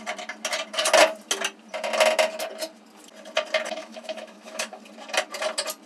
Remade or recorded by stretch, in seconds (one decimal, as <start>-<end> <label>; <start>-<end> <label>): 0.0-3.8 recorded; 3.8-4.8 remade; 4.8-5.9 recorded